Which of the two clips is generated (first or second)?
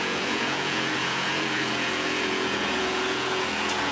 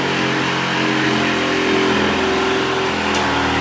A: first